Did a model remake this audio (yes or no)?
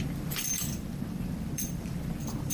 yes